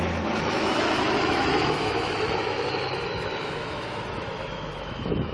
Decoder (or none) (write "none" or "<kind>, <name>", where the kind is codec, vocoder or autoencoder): autoencoder, DAC-VAE